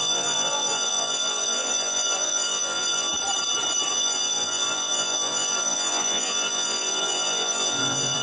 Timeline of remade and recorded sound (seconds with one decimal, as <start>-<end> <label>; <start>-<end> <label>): 0.0-3.1 remade; 3.1-3.9 recorded; 3.9-8.2 remade

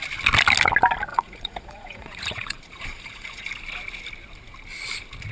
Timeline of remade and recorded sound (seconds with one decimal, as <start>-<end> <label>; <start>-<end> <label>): 0.0-1.1 recorded; 1.1-3.5 remade; 3.5-5.3 recorded

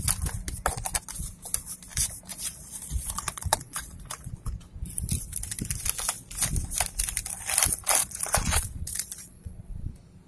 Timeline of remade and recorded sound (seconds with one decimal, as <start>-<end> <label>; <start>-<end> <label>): 0.0-2.3 recorded; 2.3-4.3 remade; 4.3-8.0 recorded; 8.0-9.9 remade; 9.9-10.3 recorded

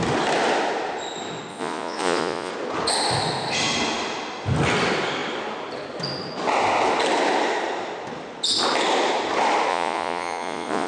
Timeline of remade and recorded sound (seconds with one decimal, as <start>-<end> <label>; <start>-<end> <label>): 0.0-1.5 recorded; 1.5-2.5 remade; 2.5-9.7 recorded; 9.7-10.9 remade

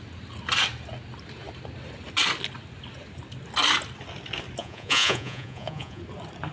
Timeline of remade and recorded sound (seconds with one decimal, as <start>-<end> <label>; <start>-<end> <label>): 0.0-4.6 recorded; 4.6-6.0 remade; 6.0-6.5 recorded

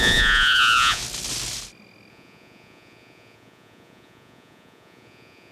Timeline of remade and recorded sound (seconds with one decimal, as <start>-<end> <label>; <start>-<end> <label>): 0.0-1.0 remade; 1.0-2.1 recorded; 2.1-5.5 remade